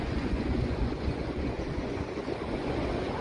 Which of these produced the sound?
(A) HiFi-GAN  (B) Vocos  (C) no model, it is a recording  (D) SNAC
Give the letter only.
B